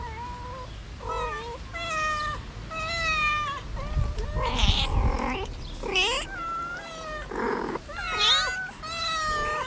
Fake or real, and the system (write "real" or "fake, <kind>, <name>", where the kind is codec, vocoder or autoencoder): real